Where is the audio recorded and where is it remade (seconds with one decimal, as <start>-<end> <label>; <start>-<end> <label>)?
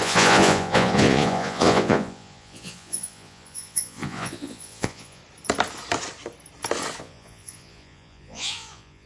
0.0-5.2 remade; 5.2-7.0 recorded; 7.0-9.1 remade